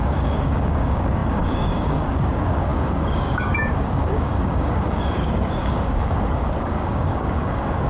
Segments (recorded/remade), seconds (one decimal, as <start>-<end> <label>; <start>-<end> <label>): 0.0-7.9 remade